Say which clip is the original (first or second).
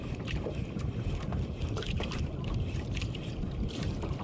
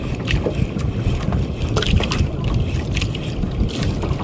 second